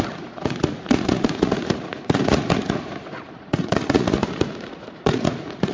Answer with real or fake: fake